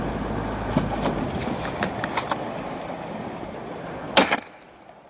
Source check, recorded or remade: recorded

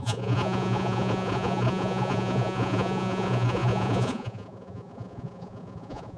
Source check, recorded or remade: remade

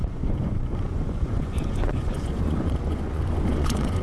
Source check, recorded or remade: remade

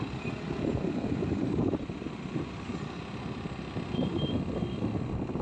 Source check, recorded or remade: recorded